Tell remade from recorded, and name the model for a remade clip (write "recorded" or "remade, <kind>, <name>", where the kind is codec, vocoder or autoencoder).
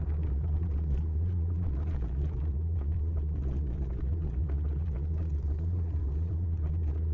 remade, vocoder, Vocos